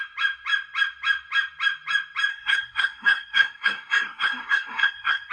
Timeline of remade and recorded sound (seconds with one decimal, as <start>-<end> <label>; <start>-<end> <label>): 0.0-2.3 recorded; 2.3-5.3 remade